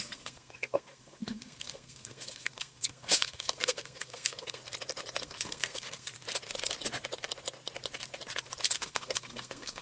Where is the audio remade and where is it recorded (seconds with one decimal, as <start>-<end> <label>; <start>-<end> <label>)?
0.0-4.6 remade; 4.6-5.2 recorded; 5.2-6.1 remade; 6.1-8.7 recorded; 8.7-9.8 remade